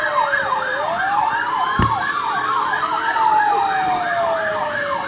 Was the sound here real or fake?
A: real